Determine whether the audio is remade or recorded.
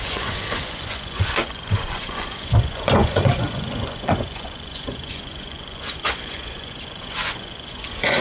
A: remade